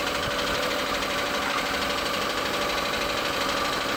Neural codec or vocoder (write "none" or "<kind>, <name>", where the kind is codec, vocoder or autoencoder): none